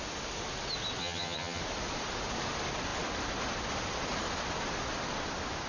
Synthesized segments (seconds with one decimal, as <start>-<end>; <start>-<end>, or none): 1.0-1.6